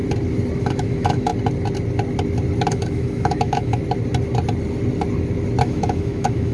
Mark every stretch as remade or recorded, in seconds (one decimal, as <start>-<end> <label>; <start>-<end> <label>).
0.0-0.6 recorded; 0.6-1.3 remade; 1.3-2.7 recorded; 2.7-3.8 remade; 3.8-5.6 recorded; 5.6-6.5 remade